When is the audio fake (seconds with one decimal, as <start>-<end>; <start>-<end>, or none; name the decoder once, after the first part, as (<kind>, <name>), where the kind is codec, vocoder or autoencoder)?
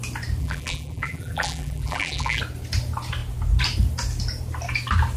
0.4-2.4 (vocoder, BigVGAN v2)